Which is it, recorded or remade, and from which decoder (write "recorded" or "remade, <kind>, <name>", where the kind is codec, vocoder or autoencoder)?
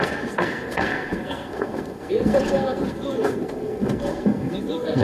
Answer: remade, codec, SNAC